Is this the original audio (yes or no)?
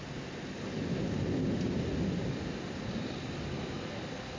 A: yes